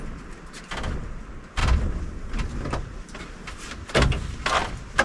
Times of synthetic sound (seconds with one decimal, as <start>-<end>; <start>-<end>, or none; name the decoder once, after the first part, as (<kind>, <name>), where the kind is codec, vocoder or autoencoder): none